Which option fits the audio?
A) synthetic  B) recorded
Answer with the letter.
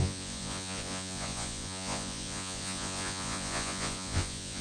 A